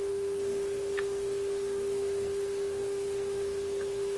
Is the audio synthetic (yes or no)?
yes